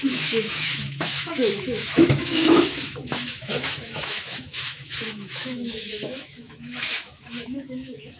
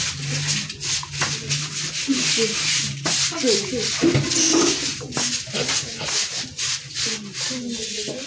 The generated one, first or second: first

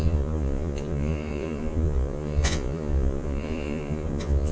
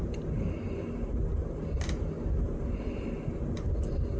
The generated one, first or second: first